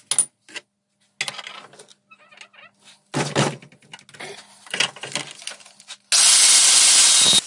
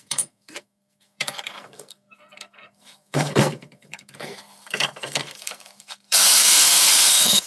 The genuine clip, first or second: first